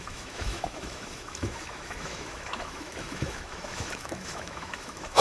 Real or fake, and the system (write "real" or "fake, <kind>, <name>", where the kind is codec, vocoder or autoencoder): fake, autoencoder, DAC-VAE